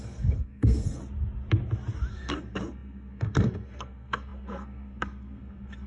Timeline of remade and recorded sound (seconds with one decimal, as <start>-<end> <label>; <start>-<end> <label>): 0.0-1.0 remade; 1.0-2.1 recorded; 2.1-5.9 remade